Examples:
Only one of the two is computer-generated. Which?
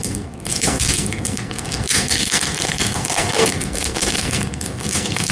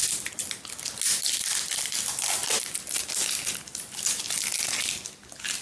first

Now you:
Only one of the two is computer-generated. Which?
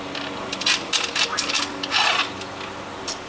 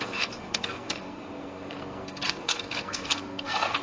second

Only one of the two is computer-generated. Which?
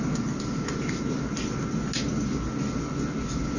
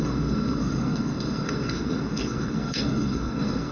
second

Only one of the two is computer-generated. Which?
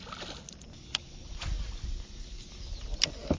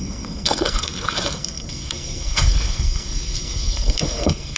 second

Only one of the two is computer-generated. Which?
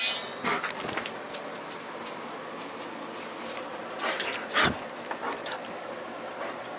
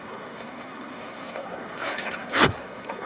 second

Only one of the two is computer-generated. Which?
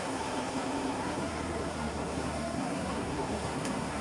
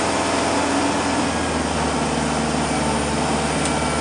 first